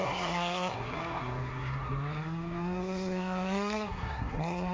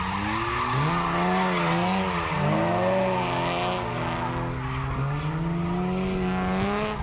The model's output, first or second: first